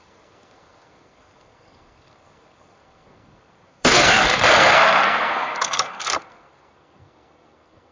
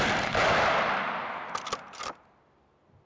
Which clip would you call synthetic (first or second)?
first